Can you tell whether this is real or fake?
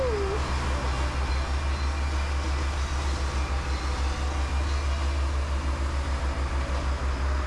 real